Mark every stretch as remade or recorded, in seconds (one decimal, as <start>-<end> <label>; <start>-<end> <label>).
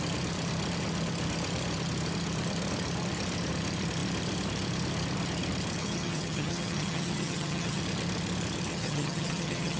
0.0-5.8 recorded; 5.8-7.8 remade; 7.8-8.7 recorded; 8.7-9.8 remade